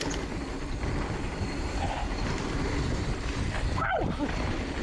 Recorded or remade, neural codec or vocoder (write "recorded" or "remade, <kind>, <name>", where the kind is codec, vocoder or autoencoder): remade, vocoder, BigVGAN v2